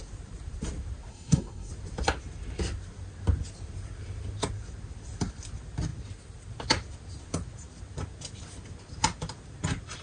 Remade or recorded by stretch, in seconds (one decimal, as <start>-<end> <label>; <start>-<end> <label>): 0.0-1.1 recorded; 1.1-1.7 remade; 1.7-10.0 recorded